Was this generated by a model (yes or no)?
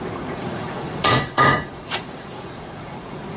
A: yes